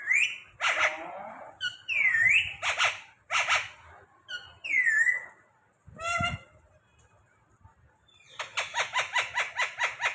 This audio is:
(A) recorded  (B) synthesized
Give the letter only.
A